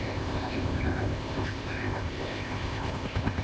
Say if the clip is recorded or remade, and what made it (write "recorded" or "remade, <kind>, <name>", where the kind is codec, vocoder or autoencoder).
remade, codec, ZipCodec